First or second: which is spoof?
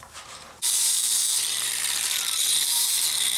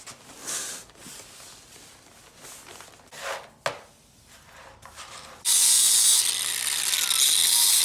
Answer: first